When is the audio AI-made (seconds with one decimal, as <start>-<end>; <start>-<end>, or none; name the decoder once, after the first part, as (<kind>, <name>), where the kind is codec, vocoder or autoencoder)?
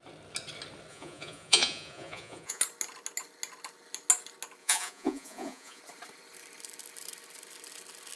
0.9-2.6 (vocoder, Vocos); 4.6-5.8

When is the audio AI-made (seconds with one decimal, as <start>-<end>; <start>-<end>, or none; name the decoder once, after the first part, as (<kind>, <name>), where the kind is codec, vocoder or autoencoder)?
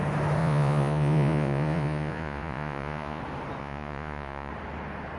0.4-3.2 (vocoder, Vocos); 3.6-4.5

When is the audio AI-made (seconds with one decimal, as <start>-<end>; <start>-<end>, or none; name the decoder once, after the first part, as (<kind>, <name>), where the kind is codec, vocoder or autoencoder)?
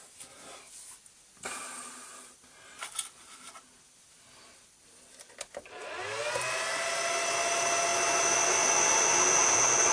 none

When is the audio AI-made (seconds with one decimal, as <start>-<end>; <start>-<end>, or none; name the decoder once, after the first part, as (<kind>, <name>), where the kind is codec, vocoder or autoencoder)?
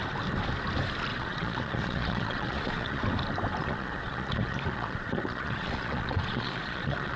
1.1-3.0 (vocoder, Vocos); 3.6-7.2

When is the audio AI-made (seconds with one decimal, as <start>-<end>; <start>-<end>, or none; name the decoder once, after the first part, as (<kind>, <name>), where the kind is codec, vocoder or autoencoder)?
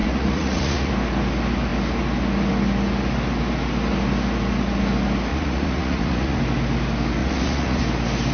0.0-0.9 (vocoder, Vocos); 5.3-6.4; 7.2-7.8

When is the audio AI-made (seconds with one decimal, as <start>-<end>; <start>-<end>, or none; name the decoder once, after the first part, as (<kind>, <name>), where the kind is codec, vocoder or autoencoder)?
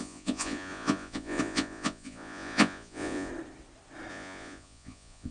0.0-3.3 (vocoder, Vocos); 4.1-5.3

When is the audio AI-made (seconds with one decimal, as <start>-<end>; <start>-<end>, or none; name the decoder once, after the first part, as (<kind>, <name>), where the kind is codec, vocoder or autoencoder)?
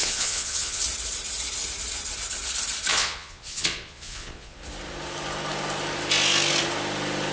0.0-0.8 (vocoder, Vocos); 2.9-4.6